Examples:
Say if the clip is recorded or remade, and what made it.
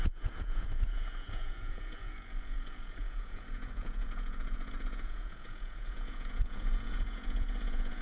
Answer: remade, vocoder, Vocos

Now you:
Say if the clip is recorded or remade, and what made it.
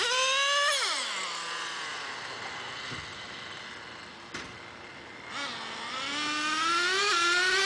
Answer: recorded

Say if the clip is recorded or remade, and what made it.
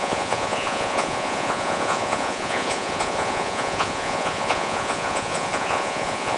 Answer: remade, vocoder, Vocos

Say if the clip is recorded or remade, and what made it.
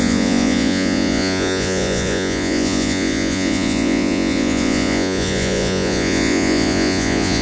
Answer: remade, vocoder, Vocos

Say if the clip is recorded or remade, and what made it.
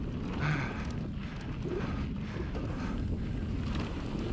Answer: recorded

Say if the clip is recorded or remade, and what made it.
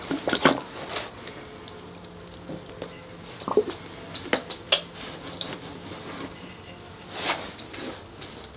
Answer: recorded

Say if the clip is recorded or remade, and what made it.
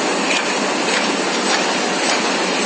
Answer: recorded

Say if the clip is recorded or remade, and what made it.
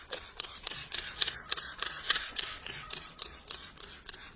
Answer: remade, vocoder, Vocos